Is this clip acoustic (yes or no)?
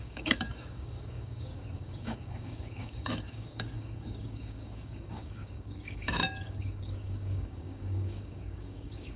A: no